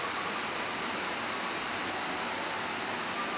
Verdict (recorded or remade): recorded